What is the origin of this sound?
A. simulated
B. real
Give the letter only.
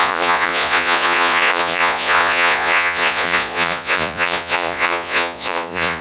A